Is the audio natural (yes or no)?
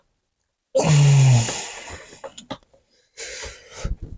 yes